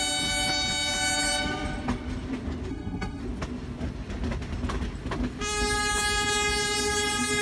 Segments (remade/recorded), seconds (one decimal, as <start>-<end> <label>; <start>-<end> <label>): 0.0-2.7 recorded; 2.7-3.2 remade; 3.2-7.4 recorded

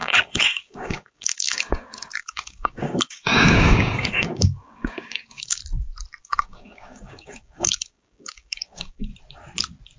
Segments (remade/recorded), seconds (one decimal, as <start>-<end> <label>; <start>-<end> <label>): 0.0-5.6 remade; 5.6-6.2 recorded; 6.2-9.1 remade; 9.1-10.0 recorded

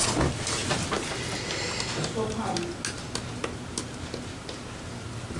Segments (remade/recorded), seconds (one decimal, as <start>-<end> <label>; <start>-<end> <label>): 0.0-5.4 recorded

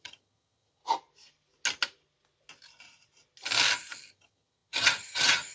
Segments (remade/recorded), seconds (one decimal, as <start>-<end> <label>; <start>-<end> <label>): 0.0-0.8 remade; 0.8-4.1 recorded; 4.1-5.5 remade

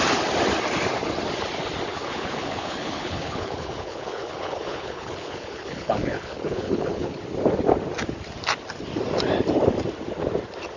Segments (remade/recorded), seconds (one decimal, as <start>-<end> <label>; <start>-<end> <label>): 0.0-1.9 recorded; 1.9-7.2 remade; 7.2-10.8 recorded